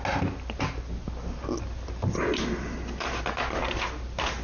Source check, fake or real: real